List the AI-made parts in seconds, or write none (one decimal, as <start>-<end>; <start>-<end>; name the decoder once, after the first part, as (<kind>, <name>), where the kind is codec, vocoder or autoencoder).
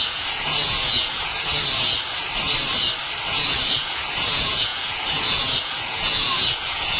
0.0-1.5 (vocoder, Vocos); 3.6-7.0